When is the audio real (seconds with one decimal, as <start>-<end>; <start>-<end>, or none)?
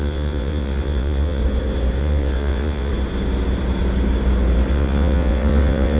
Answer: 1.4-2.0; 2.9-4.7